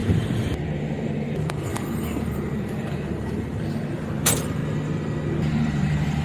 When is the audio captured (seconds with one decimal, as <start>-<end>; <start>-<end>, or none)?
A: 0.0-0.8; 4.6-5.5

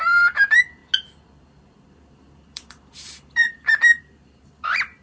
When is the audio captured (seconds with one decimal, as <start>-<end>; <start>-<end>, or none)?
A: 0.8-1.9

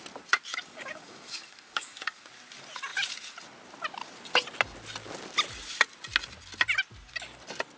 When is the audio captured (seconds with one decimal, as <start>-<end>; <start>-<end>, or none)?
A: 0.0-0.5; 2.3-7.8

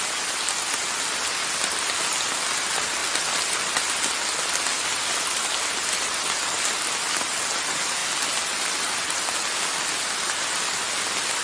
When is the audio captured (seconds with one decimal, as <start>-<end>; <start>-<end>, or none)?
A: 0.0-11.4

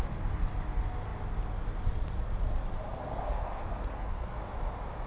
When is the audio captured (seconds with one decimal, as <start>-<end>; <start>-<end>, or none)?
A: 0.0-2.9; 4.4-5.1